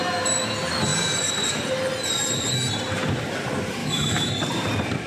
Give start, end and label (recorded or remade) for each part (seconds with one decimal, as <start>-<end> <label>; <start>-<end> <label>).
0.0-3.8 recorded; 3.8-4.3 remade; 4.3-5.1 recorded